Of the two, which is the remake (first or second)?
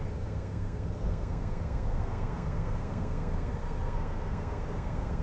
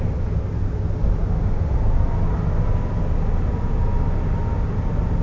first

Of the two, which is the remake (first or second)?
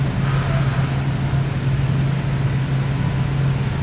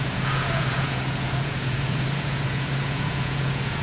second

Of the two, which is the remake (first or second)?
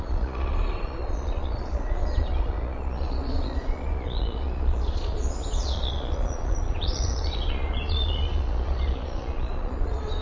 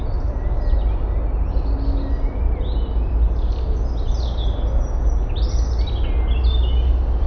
first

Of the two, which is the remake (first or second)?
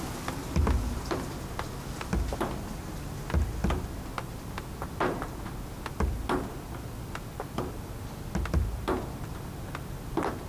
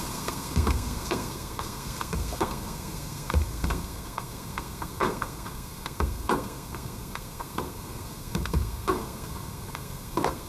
second